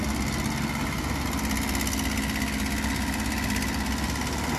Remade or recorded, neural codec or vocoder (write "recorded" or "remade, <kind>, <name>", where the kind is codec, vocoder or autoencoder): recorded